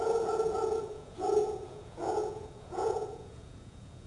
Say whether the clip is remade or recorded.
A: remade